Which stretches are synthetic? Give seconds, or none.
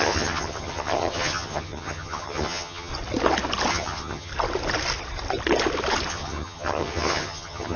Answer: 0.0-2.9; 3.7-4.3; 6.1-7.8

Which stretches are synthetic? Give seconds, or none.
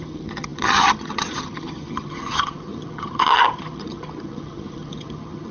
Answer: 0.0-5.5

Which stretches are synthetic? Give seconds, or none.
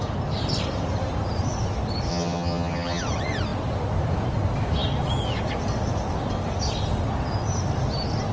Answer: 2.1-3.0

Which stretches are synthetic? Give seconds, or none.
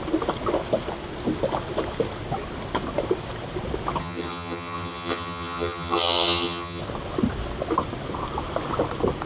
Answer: 4.0-6.8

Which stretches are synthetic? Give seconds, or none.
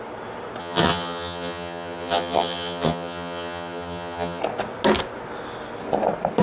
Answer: 0.6-4.4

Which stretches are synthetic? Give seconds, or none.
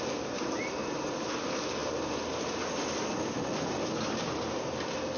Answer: none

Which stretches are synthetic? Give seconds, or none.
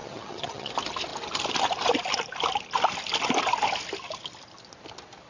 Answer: 0.0-0.7